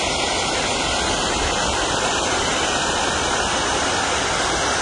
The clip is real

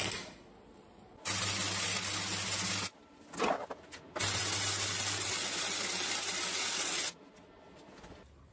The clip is real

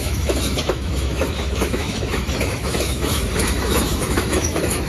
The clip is fake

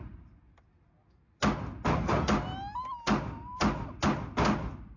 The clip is real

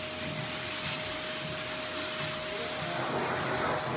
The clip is real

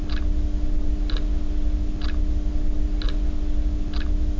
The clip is real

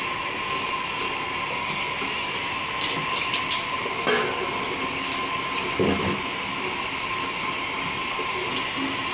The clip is real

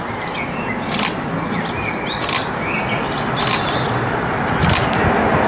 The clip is real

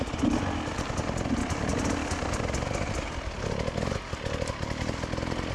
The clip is real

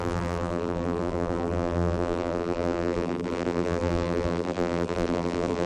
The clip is fake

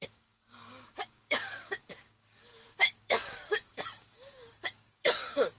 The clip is fake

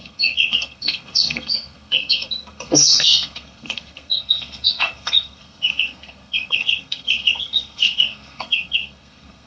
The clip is fake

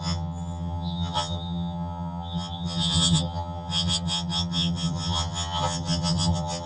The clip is fake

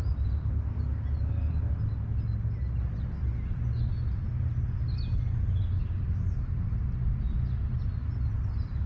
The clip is real